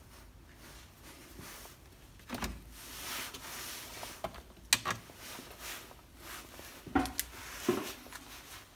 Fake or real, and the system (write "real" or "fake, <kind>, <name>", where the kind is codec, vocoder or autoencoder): real